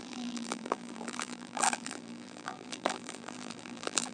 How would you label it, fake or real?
fake